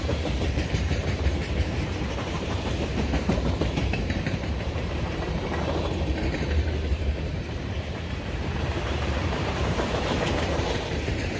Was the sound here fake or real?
fake